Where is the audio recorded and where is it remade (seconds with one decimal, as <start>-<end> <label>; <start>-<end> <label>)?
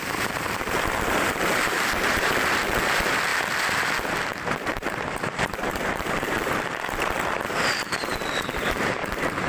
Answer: 0.0-3.3 remade; 3.3-5.2 recorded; 5.2-9.5 remade